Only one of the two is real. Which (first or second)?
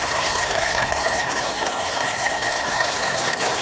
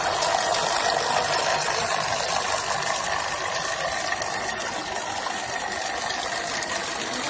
second